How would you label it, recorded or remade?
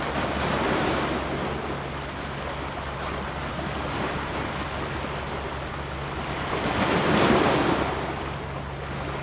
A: recorded